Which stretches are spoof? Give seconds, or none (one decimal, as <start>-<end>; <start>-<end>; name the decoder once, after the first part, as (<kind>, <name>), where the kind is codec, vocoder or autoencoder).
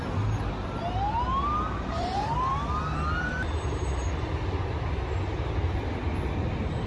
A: 1.6-2.5 (vocoder, BigVGAN v2)